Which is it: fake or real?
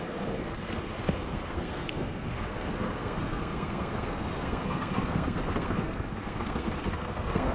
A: fake